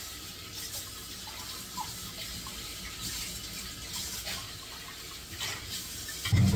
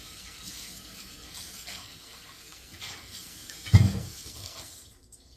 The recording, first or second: first